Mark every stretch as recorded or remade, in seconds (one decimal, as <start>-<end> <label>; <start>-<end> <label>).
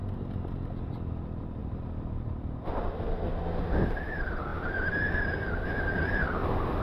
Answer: 0.0-1.6 recorded; 1.6-2.7 remade; 2.7-6.8 recorded